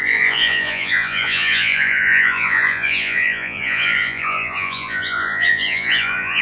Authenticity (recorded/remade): remade